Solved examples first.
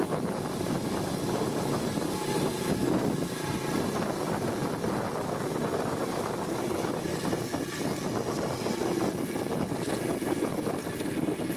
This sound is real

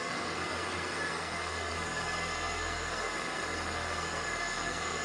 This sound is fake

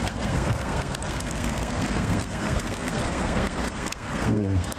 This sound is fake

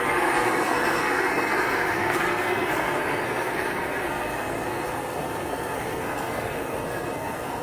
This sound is fake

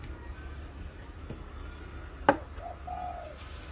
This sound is real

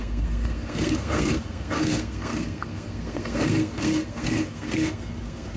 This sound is fake